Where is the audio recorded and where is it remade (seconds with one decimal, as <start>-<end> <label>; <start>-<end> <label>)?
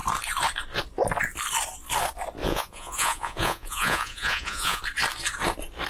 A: 0.0-2.4 recorded; 2.4-4.8 remade; 4.8-5.9 recorded